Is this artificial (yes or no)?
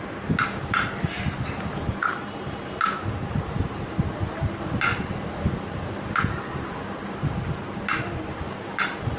no